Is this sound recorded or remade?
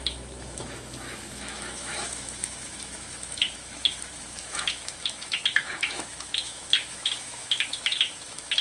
remade